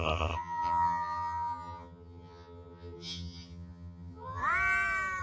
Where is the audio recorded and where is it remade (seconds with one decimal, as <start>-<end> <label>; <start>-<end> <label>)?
0.0-4.4 remade; 4.4-5.2 recorded